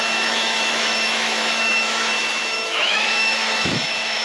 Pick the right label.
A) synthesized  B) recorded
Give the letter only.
A